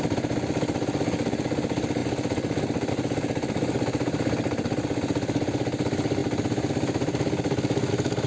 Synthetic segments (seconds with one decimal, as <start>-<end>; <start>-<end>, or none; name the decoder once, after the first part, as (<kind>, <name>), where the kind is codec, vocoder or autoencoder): none